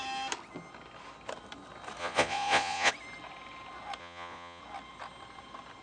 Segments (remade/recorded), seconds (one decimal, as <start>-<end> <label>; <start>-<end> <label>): 0.0-2.0 recorded; 2.0-2.9 remade; 2.9-4.0 recorded; 4.0-4.6 remade; 4.6-5.8 recorded